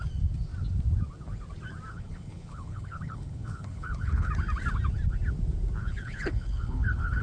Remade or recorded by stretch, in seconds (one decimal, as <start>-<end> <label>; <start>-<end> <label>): 0.0-1.9 recorded; 1.9-4.3 remade; 4.3-5.8 recorded; 5.8-7.2 remade